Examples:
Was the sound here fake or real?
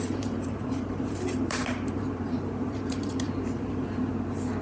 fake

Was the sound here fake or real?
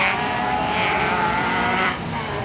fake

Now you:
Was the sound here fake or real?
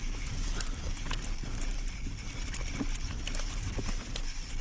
fake